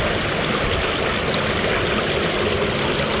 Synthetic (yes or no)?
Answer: no